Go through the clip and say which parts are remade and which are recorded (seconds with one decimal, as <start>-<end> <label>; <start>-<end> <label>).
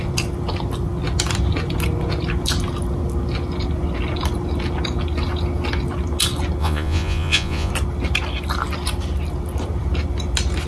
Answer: 0.0-6.6 recorded; 6.6-7.7 remade; 7.7-10.7 recorded